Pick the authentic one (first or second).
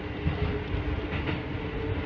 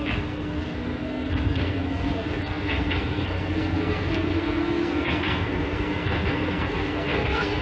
first